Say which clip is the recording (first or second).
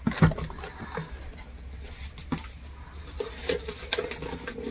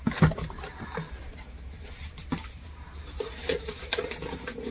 first